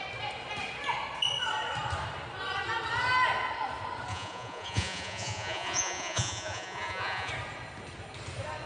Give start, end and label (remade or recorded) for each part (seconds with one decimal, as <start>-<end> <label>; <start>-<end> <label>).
0.0-4.1 recorded; 4.1-7.3 remade; 7.3-8.7 recorded